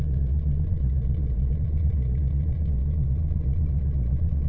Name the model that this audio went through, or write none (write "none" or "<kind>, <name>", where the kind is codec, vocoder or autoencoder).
vocoder, Vocos